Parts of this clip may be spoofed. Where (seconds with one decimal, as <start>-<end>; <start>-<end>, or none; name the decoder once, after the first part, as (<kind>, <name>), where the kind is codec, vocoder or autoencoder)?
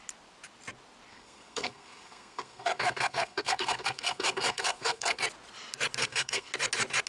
1.1-5.2 (codec, SNAC); 6.0-6.5